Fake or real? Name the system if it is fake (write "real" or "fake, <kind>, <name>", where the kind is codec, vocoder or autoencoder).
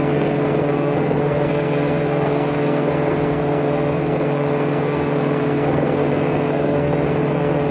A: fake, codec, SNAC